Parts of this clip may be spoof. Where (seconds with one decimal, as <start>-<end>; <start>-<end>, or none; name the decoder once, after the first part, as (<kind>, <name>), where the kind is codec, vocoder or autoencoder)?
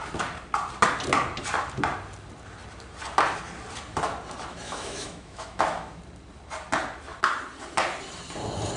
4.5-6.0 (autoencoder, DAC-VAE)